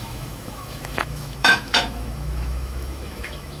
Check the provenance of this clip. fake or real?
fake